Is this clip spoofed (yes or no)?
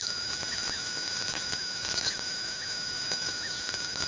yes